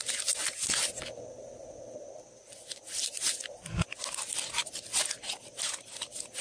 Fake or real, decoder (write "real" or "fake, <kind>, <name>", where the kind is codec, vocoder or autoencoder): real